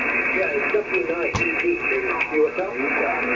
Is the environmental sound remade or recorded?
recorded